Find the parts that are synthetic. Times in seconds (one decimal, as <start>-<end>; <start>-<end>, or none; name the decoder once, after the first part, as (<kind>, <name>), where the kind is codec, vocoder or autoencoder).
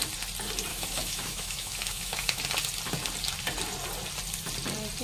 0.7-2.4 (autoencoder, DAC-VAE)